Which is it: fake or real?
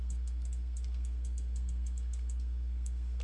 fake